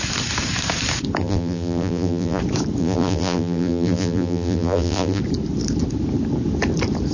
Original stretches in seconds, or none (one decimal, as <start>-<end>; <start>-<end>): 0.0-1.2; 2.4-2.8; 5.2-7.1